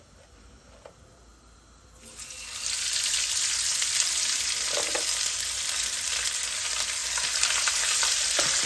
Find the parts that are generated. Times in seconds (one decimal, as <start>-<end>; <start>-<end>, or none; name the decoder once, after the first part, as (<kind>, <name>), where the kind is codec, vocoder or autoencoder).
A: none